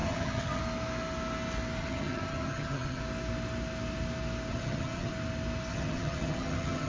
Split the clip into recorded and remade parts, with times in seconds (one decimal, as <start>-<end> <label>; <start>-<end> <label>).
0.0-0.6 remade; 0.6-1.8 recorded; 1.8-3.0 remade; 3.0-4.5 recorded; 4.5-5.1 remade; 5.1-5.7 recorded; 5.7-6.9 remade